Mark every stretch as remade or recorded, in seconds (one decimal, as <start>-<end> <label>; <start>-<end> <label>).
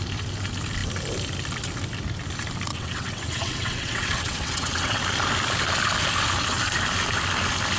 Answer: 0.0-2.7 recorded; 2.7-5.0 remade; 5.0-7.8 recorded